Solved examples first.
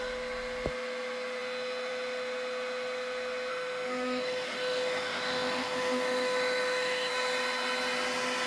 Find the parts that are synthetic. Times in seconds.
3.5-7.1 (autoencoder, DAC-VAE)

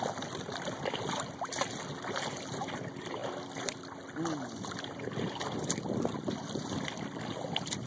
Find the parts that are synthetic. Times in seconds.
none

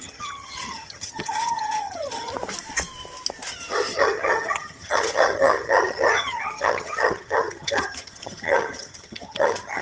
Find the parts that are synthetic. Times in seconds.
0.0-2.3 (vocoder, HiFi-GAN); 3.9-9.8

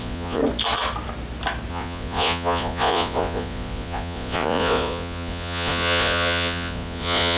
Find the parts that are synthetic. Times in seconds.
0.0-0.4 (vocoder, Vocos); 1.7-7.4